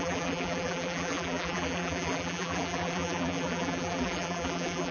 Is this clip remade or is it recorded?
remade